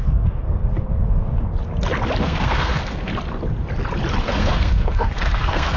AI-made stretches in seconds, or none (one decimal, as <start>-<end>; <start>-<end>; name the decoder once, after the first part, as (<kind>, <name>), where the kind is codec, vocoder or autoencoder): 0.0-0.6 (codec, SNAC); 2.2-3.1; 4.2-5.8

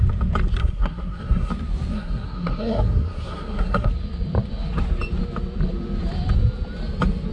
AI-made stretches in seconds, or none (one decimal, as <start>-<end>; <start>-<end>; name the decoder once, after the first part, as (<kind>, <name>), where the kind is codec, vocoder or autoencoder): 0.6-1.5 (codec, SNAC); 1.9-3.9